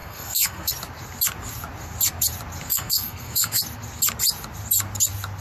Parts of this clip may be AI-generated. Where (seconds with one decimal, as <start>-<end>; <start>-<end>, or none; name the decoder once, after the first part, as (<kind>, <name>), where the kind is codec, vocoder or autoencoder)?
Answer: 0.0-0.7 (codec, SNAC); 2.7-3.6